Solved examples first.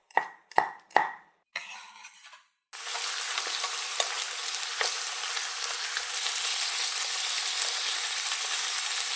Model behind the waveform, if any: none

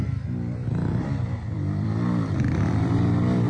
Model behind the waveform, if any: vocoder, BigVGAN v2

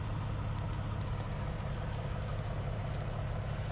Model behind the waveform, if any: none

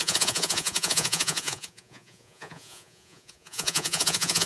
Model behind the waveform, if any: vocoder, Vocos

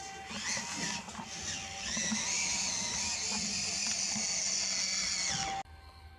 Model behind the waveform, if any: none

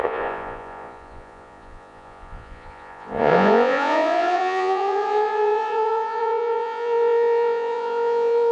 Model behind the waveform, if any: vocoder, Vocos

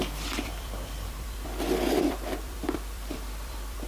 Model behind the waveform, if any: vocoder, BigVGAN v2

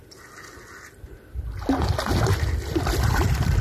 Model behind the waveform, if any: none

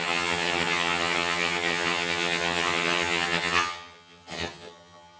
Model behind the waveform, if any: vocoder, HiFi-GAN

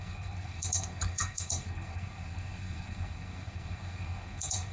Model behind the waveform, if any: codec, SNAC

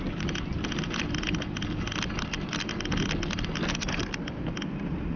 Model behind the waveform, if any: none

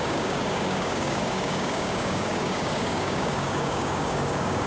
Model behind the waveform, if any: codec, DAC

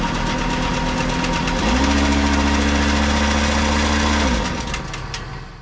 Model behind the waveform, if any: none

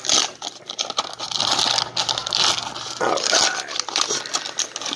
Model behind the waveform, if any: none